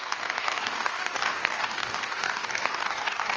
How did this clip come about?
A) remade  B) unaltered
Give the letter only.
A